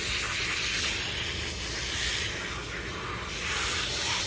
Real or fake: real